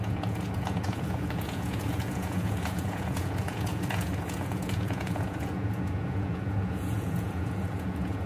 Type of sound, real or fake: fake